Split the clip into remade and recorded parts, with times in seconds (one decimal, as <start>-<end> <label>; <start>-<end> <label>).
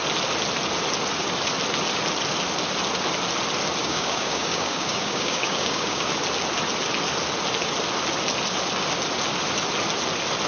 0.0-3.8 recorded; 3.8-6.1 remade; 6.1-10.5 recorded